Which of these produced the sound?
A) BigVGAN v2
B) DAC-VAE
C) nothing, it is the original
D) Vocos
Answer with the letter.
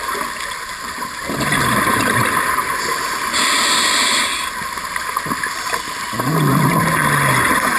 C